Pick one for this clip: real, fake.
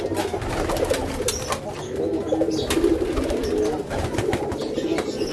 real